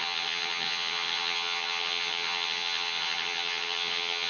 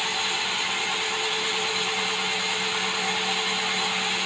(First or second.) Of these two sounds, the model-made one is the first